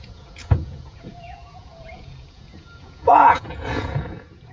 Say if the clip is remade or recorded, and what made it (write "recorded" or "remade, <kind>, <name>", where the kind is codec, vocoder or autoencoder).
remade, vocoder, Vocos